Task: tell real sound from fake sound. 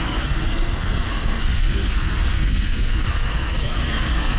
fake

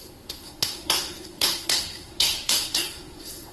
fake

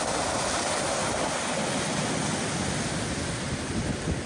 real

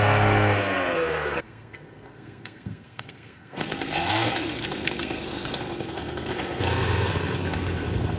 fake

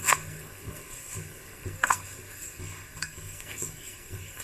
fake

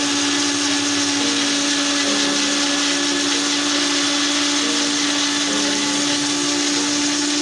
real